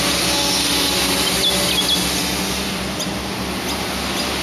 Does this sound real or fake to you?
real